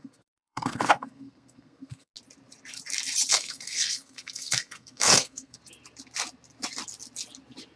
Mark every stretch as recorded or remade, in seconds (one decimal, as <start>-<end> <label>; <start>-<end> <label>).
0.0-2.1 remade; 2.1-3.3 recorded; 3.3-5.6 remade; 5.6-7.8 recorded